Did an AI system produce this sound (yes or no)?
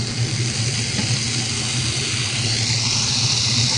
no